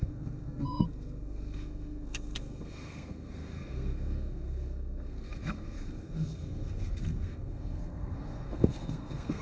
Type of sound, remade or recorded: remade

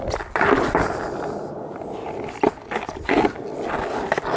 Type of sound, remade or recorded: recorded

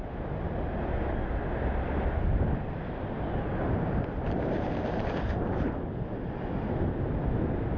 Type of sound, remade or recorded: recorded